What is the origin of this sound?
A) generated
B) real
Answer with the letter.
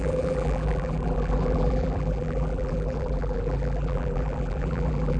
A